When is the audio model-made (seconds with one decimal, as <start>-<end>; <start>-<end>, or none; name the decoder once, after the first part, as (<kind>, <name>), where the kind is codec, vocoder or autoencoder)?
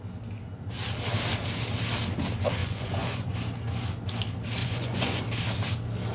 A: 2.6-3.3 (vocoder, Vocos); 4.6-5.2